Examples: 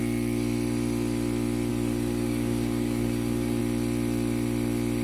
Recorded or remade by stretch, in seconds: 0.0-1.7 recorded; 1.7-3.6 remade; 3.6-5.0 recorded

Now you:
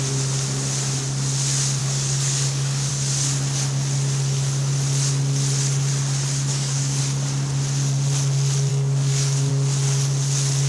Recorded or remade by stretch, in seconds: 0.0-1.8 recorded; 1.8-2.9 remade; 2.9-6.5 recorded; 6.5-7.0 remade; 7.0-8.7 recorded; 8.7-9.5 remade; 9.5-10.7 recorded

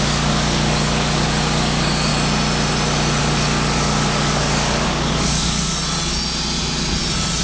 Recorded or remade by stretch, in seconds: 0.0-2.1 remade; 2.1-3.2 recorded; 3.2-5.7 remade; 5.7-7.4 recorded

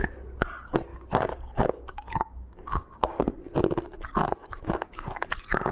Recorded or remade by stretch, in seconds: 0.0-0.9 recorded; 0.9-3.3 remade; 3.3-4.4 recorded; 4.4-5.2 remade; 5.2-5.7 recorded

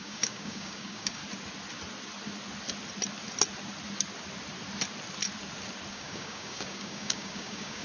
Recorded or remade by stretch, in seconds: 0.0-1.2 remade; 1.2-5.9 recorded; 5.9-7.8 remade

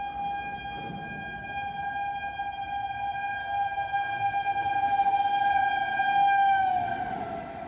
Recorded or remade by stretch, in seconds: 0.0-3.4 recorded; 3.4-5.5 remade; 5.5-7.7 recorded